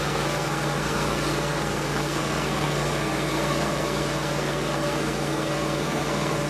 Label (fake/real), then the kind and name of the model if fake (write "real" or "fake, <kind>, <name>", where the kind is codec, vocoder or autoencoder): fake, codec, SNAC